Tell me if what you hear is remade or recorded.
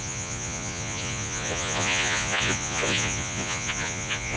remade